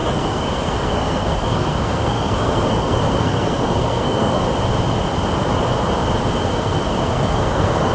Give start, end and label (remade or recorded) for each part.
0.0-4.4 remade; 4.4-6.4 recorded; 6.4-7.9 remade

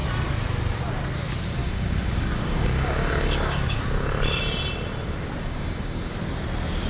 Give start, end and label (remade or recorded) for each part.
0.0-1.6 recorded; 1.6-4.4 remade; 4.4-5.4 recorded; 5.4-6.2 remade; 6.2-6.9 recorded

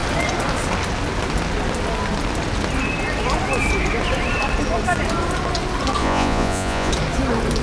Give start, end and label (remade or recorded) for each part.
0.0-6.0 recorded; 6.0-6.9 remade; 6.9-7.6 recorded

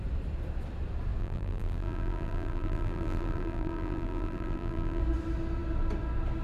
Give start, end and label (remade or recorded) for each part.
0.0-1.2 recorded; 1.2-5.0 remade; 5.0-6.4 recorded